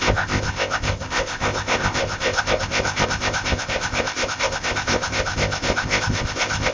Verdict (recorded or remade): remade